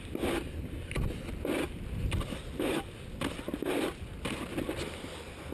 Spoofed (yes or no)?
no